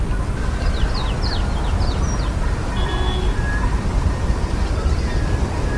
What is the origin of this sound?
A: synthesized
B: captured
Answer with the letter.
B